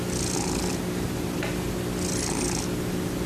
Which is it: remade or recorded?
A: recorded